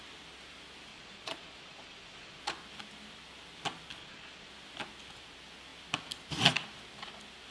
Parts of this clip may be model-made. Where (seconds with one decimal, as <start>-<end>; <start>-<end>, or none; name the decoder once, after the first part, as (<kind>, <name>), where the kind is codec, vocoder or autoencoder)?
0.9-2.4 (vocoder, Vocos); 4.0-4.5